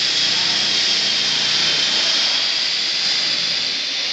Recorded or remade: recorded